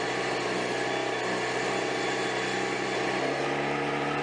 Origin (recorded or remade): recorded